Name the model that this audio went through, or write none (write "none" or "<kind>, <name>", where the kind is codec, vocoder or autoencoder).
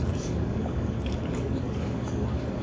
codec, DAC